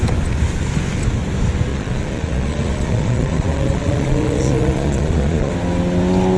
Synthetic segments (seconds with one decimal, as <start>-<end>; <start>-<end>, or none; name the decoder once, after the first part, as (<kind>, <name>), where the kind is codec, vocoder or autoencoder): 1.7-5.5 (vocoder, Vocos)